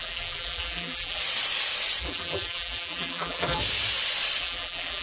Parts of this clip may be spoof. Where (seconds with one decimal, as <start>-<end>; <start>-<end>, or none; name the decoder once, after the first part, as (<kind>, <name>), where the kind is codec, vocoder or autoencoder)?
0.0-1.2 (vocoder, BigVGAN v2); 2.0-3.6; 4.4-5.0